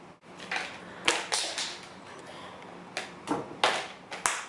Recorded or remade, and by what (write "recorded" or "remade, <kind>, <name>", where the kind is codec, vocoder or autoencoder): recorded